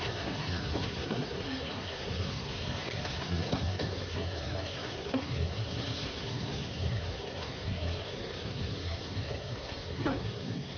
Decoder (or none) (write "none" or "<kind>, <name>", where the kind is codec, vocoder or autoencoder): codec, SNAC